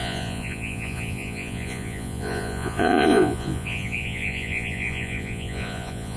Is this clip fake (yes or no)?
yes